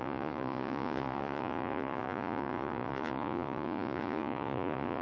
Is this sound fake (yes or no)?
yes